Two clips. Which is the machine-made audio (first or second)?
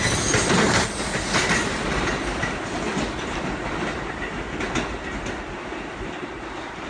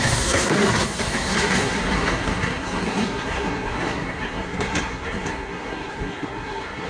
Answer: second